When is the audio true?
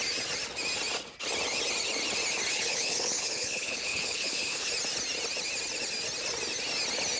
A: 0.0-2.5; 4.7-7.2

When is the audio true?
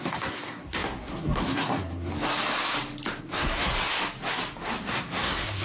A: 2.1-3.2; 3.7-4.9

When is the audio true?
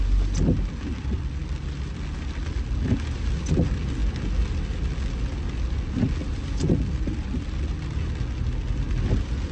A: 0.0-9.5